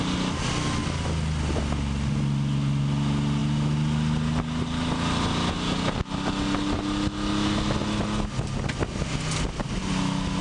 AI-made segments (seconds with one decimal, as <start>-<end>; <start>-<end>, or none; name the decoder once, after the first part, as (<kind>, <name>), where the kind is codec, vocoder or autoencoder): none